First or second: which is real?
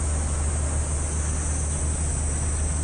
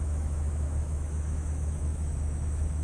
first